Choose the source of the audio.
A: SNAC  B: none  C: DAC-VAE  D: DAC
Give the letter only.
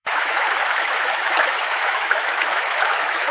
C